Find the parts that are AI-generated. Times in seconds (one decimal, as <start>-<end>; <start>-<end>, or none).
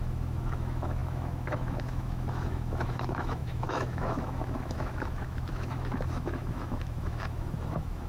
0.0-8.1